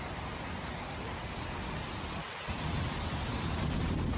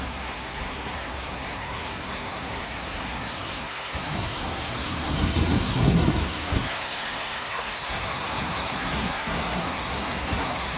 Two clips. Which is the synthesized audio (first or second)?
second